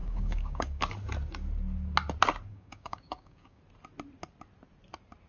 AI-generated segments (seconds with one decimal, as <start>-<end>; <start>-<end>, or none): 0.0-0.8; 2.5-3.6